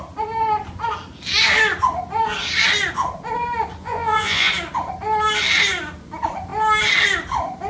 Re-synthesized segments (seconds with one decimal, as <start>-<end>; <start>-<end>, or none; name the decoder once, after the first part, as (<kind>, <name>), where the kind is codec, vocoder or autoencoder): 3.8-4.5 (vocoder, Vocos)